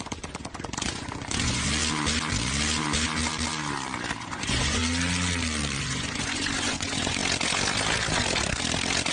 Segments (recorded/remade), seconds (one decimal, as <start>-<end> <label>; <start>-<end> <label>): 0.0-1.8 remade; 1.8-4.2 recorded; 4.2-4.8 remade; 4.8-5.8 recorded; 5.8-7.2 remade; 7.2-9.1 recorded